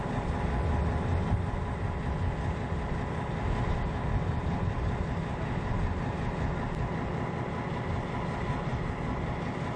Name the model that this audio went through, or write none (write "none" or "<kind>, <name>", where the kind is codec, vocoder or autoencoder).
none